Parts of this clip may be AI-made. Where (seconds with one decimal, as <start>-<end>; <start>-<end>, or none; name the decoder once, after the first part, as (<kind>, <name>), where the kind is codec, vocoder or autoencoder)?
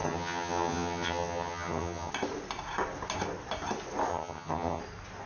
0.0-2.1 (vocoder, HiFi-GAN); 4.1-4.8